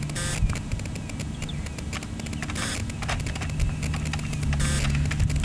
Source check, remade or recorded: recorded